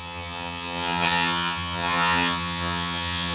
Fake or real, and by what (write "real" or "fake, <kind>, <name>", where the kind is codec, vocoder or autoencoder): fake, vocoder, HiFi-GAN